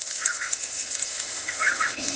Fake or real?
fake